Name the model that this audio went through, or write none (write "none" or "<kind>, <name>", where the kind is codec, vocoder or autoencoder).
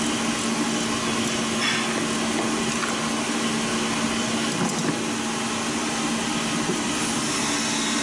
none